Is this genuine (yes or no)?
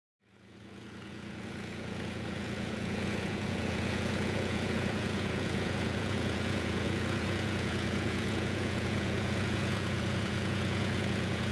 no